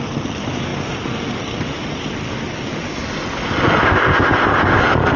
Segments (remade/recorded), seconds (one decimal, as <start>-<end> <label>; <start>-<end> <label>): 0.0-3.8 recorded; 3.8-4.8 remade; 4.8-5.2 recorded

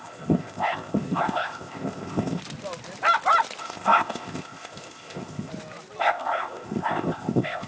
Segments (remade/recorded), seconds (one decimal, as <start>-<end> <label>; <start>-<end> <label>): 0.0-2.4 remade; 2.4-3.6 recorded; 3.6-5.5 remade; 5.5-6.0 recorded; 6.0-7.7 remade

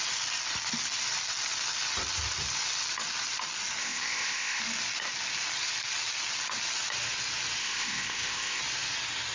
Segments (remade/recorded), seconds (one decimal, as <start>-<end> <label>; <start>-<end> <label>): 0.0-3.8 recorded; 3.8-4.6 remade; 4.6-7.6 recorded; 7.6-8.6 remade; 8.6-9.3 recorded